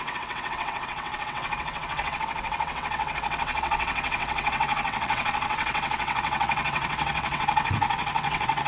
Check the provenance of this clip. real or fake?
fake